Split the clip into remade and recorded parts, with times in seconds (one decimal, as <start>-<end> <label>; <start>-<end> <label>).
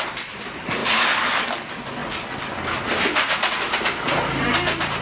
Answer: 0.0-5.0 recorded